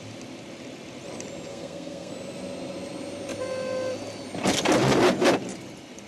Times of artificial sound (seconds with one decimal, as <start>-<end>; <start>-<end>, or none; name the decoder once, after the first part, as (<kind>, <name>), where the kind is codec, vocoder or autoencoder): 1.5-2.1 (codec, SNAC)